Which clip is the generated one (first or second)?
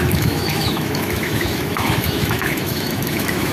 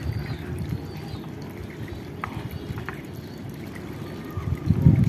first